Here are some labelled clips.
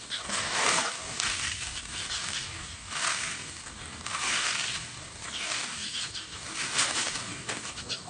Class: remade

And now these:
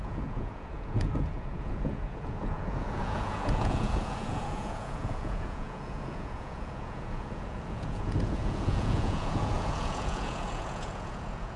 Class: remade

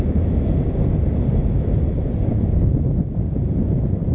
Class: recorded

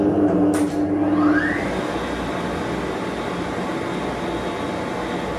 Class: recorded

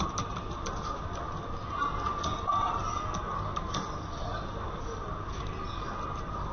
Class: recorded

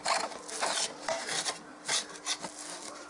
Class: remade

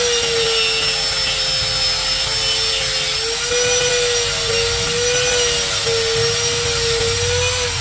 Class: recorded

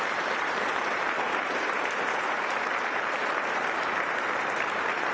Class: remade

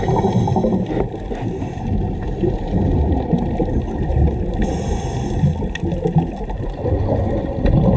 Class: recorded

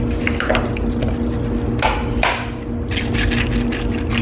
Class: recorded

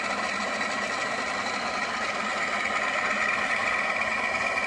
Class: recorded